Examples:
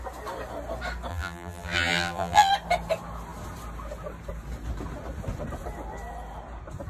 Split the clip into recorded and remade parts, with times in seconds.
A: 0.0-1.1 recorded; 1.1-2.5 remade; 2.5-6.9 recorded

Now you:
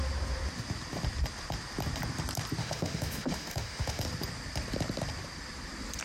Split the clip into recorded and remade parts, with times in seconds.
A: 0.0-2.6 recorded; 2.6-4.0 remade; 4.0-6.0 recorded

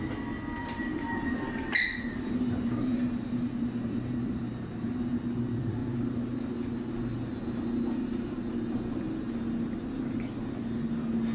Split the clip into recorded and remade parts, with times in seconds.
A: 0.0-0.6 recorded; 0.6-5.0 remade; 5.0-5.8 recorded; 5.8-6.5 remade; 6.5-11.3 recorded

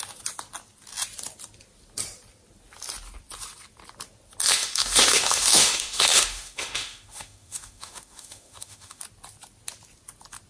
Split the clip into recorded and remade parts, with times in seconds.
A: 0.0-4.4 recorded; 4.4-9.0 remade; 9.0-10.5 recorded

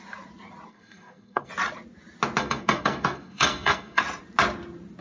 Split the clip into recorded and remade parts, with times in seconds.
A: 0.0-0.7 recorded; 0.7-1.5 remade; 1.5-2.4 recorded; 2.4-4.0 remade; 4.0-5.0 recorded

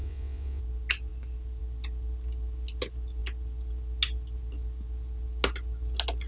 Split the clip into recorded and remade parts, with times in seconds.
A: 0.0-0.6 remade; 0.6-6.3 recorded